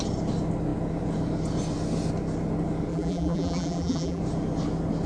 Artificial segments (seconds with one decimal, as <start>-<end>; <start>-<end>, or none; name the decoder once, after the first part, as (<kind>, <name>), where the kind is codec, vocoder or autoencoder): 2.9-4.2 (vocoder, BigVGAN v2)